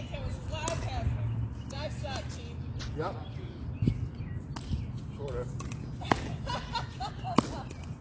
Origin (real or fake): real